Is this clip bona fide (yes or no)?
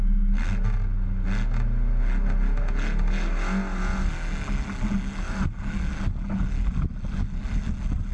yes